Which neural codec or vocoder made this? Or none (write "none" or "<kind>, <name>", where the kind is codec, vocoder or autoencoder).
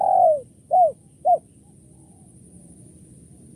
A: vocoder, BigVGAN v2